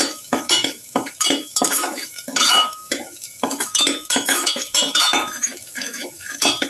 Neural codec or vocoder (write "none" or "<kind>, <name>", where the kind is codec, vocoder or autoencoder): autoencoder, DAC-VAE